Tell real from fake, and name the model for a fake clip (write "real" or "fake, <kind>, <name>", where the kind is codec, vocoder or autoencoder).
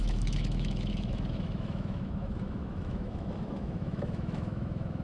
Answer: fake, autoencoder, DAC-VAE